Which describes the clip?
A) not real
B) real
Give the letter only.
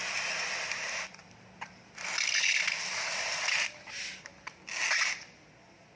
B